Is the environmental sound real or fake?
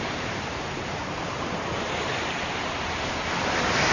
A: fake